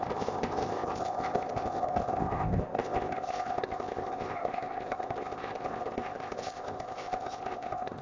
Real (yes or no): no